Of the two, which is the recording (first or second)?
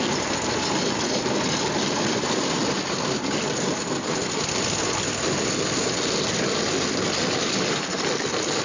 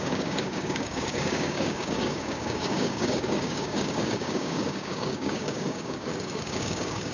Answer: first